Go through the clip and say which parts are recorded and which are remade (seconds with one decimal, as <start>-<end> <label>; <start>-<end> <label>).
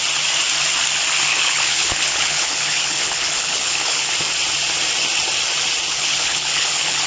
0.0-1.3 recorded; 1.3-4.1 remade; 4.1-5.9 recorded; 5.9-7.1 remade